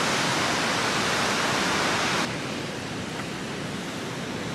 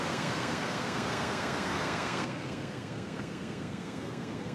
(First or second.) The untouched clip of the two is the first